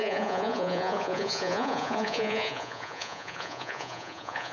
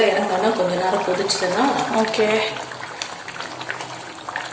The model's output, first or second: first